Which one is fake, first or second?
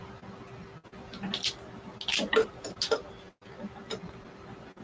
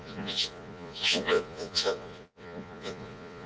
second